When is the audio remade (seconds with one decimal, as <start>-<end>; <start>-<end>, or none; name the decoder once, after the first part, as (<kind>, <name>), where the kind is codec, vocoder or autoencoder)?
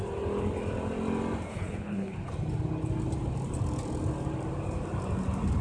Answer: 1.5-2.3 (codec, HILCodec)